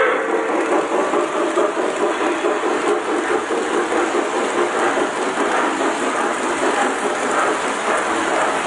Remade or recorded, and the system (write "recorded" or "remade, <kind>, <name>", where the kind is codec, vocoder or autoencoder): recorded